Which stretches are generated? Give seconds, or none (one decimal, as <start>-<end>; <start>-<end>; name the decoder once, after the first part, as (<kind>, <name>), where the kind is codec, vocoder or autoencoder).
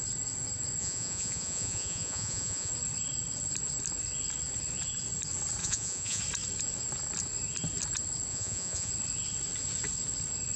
0.8-2.7 (vocoder, Vocos); 5.6-6.2; 8.3-8.9